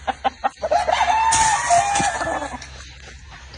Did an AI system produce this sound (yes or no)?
no